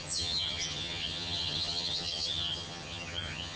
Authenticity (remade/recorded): remade